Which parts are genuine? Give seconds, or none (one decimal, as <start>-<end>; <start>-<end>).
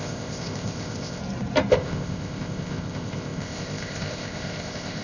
1.2-1.7